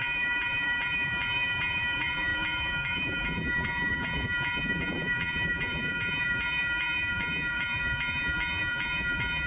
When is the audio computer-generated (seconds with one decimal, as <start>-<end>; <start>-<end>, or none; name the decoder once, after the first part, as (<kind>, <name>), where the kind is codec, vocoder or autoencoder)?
0.0-9.5 (vocoder, BigVGAN v2)